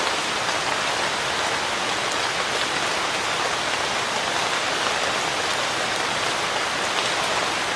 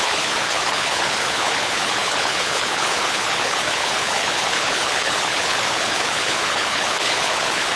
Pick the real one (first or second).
first